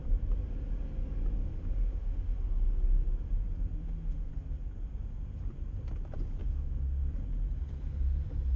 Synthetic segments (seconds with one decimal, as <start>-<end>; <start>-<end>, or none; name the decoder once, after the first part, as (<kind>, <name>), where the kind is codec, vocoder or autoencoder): 1.4-2.4 (autoencoder, DAC-VAE); 3.8-4.3; 6.4-7.1